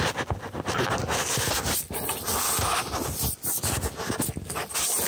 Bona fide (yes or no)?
yes